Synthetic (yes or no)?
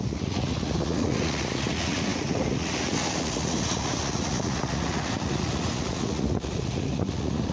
yes